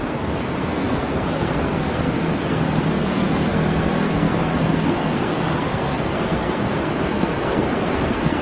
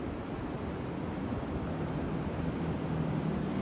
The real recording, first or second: second